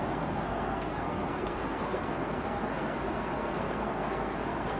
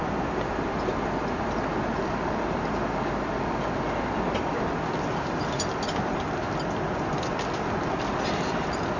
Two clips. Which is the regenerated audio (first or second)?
first